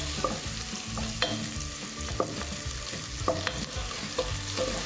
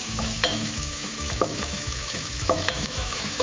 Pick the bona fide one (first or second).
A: first